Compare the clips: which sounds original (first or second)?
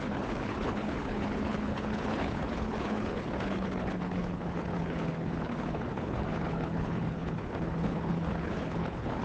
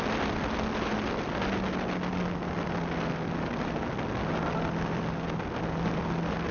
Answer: second